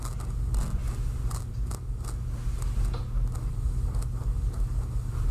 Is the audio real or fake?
real